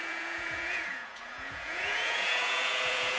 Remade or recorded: remade